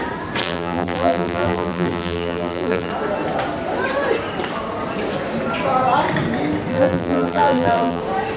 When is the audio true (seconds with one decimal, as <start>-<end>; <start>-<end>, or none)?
0.0-0.4; 2.9-6.7; 8.0-8.4